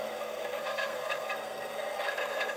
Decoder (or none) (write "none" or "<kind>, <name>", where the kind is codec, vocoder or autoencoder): codec, SNAC